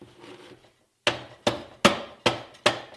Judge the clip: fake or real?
real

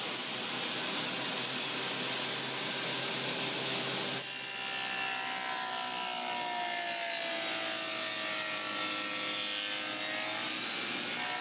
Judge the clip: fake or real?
real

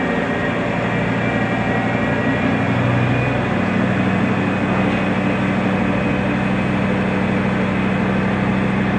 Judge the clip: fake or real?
real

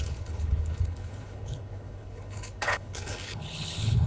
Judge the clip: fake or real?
fake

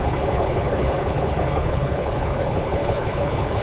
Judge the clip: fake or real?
fake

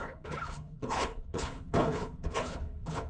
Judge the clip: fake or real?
fake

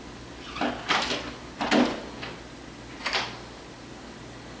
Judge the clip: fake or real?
real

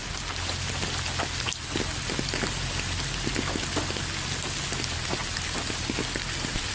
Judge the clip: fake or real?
real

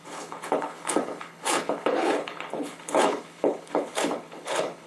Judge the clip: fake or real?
fake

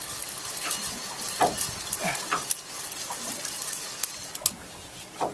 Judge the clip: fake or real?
real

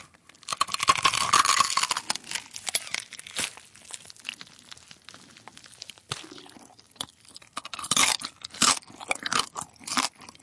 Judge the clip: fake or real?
real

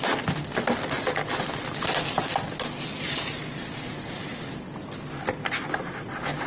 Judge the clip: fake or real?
real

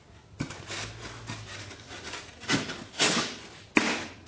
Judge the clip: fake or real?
real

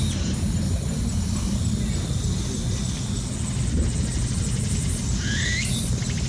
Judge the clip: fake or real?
real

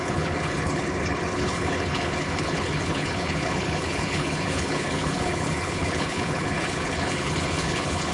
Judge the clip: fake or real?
fake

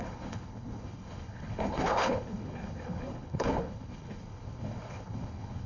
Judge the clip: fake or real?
fake